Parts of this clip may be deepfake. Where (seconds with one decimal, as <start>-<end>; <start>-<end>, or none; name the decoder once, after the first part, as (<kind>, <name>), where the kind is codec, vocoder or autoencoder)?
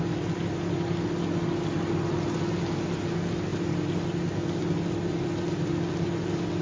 none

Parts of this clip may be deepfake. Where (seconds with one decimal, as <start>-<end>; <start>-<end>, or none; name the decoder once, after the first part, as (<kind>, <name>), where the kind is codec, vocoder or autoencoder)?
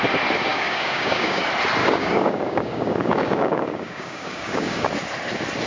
0.5-1.4 (codec, DAC); 1.8-4.9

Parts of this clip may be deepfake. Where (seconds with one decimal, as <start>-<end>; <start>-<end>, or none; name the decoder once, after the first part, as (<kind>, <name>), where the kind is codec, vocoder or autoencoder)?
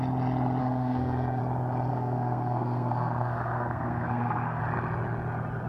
0.6-1.4 (codec, SNAC); 1.9-4.6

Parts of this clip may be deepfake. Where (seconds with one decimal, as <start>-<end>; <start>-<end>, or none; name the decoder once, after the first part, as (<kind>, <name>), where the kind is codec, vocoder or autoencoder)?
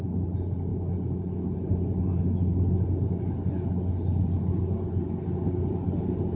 none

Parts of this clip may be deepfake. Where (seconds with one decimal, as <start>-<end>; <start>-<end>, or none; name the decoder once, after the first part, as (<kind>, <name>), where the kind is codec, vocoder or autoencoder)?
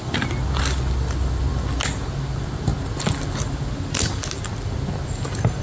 none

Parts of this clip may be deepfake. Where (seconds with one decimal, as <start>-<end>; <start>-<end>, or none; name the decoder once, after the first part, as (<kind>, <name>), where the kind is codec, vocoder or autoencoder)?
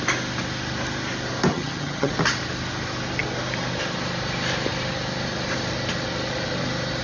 1.5-2.1 (vocoder, HiFi-GAN)